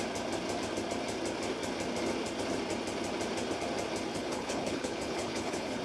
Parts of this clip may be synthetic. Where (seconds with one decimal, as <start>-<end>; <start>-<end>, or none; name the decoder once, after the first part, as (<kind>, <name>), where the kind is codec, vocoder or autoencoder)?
4.1-5.8 (codec, HILCodec)